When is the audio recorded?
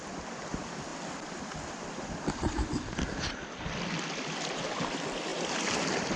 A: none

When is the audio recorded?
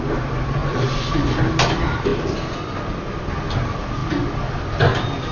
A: 0.0-0.6; 1.4-5.3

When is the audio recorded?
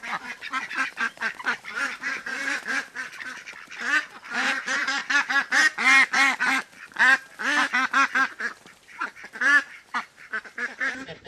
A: 2.4-4.3; 5.0-8.8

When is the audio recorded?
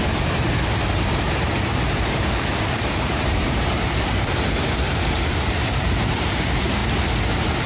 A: 6.8-7.3